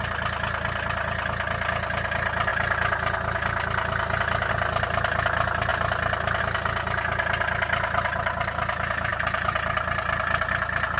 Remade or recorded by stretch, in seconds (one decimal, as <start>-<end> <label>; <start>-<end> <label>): 0.0-9.1 recorded; 9.1-10.5 remade; 10.5-11.0 recorded